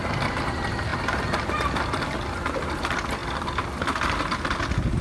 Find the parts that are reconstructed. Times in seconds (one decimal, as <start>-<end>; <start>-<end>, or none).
3.2-4.1